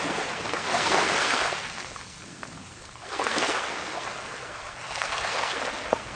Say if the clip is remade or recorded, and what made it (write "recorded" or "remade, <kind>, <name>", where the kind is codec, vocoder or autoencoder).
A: remade, codec, SNAC